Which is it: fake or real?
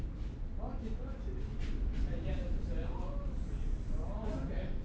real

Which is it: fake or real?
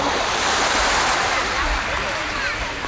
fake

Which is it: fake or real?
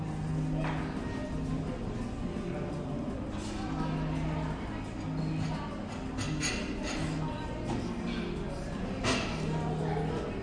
real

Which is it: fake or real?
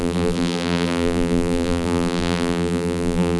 fake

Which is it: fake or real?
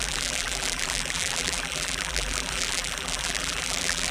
fake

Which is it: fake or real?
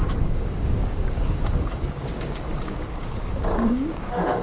fake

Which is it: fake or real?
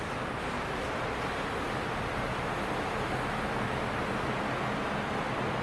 real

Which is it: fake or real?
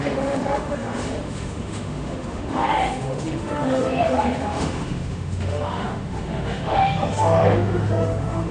fake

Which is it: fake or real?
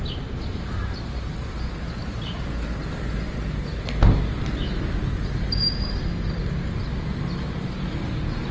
real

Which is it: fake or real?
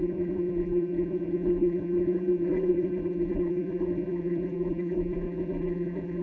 fake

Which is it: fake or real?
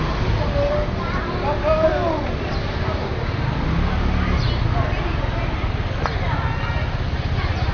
real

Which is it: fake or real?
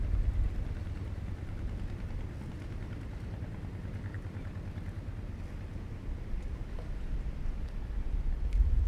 real